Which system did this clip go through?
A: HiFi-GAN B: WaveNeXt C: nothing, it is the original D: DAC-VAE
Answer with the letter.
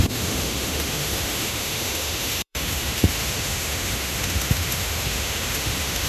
D